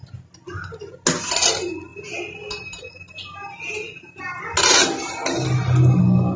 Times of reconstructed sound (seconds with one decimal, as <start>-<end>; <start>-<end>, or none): none